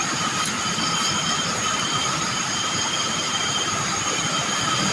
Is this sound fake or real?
fake